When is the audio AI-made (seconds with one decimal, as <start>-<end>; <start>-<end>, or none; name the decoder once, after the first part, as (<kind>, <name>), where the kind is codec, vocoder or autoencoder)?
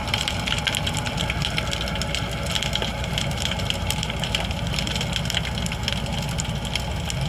0.0-0.6 (vocoder, BigVGAN v2); 2.9-4.8